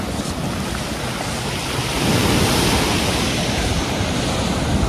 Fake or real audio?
real